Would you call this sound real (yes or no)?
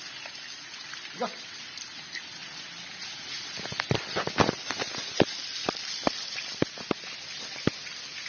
yes